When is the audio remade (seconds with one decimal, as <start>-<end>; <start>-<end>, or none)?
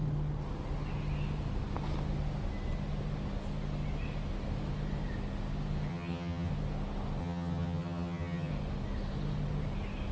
5.9-6.5; 7.2-8.5